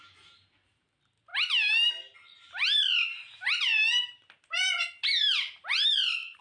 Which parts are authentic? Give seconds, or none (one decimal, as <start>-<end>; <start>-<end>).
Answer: 1.3-2.4; 3.7-5.1